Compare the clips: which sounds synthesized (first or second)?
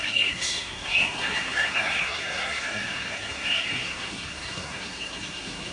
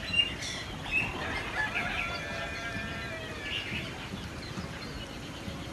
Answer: first